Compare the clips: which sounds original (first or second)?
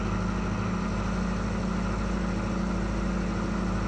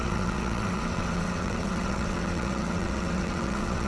first